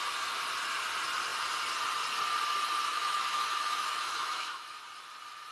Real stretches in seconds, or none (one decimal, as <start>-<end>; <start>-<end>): 0.0-2.9; 4.8-5.5